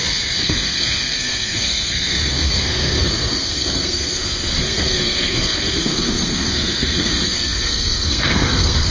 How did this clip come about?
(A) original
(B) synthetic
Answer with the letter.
B